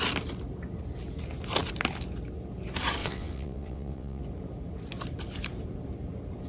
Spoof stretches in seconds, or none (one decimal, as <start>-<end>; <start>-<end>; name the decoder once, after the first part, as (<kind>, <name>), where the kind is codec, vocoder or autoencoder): 3.0-4.2 (vocoder, WaveNeXt)